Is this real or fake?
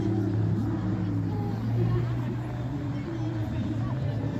real